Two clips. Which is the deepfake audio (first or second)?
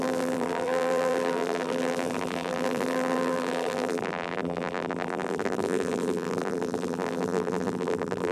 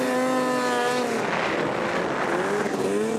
first